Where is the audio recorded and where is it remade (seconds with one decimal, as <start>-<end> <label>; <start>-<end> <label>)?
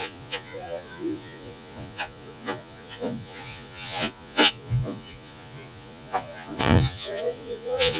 0.0-8.0 remade